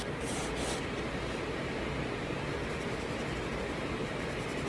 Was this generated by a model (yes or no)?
no